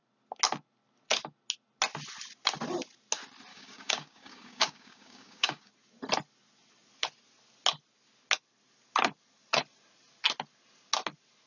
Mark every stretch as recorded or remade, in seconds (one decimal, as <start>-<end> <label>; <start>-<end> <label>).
0.0-3.5 recorded; 3.5-5.7 remade; 5.7-11.5 recorded